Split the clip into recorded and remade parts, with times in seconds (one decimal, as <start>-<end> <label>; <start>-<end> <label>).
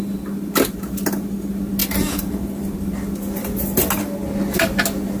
0.0-5.2 recorded